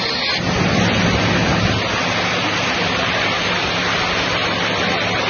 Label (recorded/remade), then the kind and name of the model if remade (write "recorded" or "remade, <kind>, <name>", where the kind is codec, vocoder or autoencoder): recorded